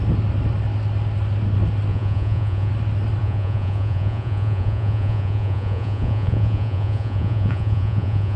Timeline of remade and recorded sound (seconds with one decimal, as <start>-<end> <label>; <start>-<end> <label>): 0.0-1.9 recorded; 1.9-2.7 remade; 2.7-3.2 recorded; 3.2-8.4 remade